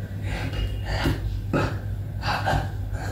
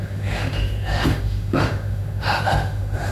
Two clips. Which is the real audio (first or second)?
first